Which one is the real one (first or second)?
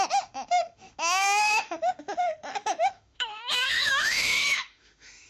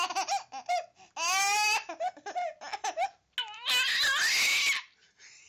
second